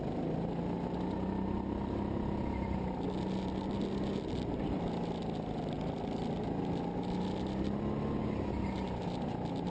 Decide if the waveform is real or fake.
real